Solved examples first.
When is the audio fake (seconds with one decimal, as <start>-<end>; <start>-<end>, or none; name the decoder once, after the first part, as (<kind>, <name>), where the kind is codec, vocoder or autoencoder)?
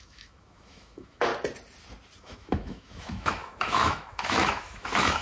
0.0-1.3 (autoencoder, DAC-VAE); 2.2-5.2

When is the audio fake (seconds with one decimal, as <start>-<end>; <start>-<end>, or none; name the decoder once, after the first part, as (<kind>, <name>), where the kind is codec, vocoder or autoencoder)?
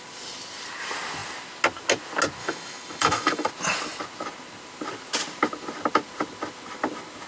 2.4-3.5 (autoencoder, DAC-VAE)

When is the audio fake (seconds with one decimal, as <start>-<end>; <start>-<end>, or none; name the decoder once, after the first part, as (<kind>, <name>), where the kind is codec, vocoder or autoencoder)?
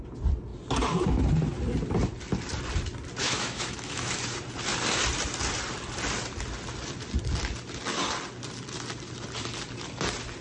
3.2-4.2 (autoencoder, DAC-VAE)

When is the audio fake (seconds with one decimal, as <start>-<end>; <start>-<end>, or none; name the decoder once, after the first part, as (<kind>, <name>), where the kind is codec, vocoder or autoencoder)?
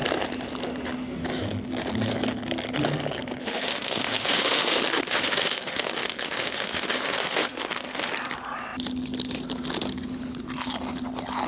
3.4-8.1 (autoencoder, DAC-VAE)